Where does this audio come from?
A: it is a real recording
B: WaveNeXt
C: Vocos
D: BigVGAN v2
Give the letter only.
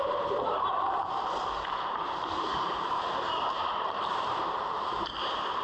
D